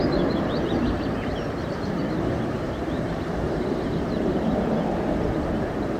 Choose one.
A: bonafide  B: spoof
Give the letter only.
B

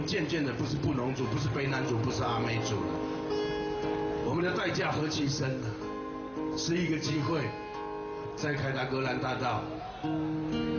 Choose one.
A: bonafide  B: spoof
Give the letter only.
A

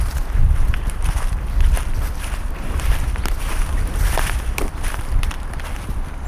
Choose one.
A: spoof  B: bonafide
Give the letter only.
A